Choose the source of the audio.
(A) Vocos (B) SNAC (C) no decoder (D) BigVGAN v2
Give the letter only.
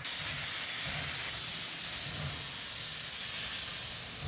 C